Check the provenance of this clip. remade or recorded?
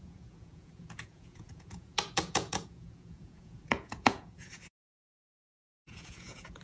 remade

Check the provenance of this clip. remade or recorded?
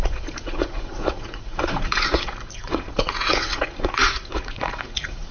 remade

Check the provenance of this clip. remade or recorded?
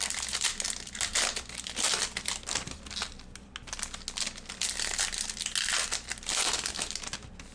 recorded